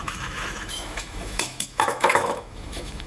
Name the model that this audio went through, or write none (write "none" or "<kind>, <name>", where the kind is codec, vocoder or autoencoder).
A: autoencoder, DAC-VAE